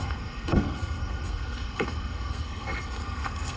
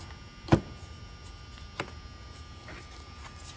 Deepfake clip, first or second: first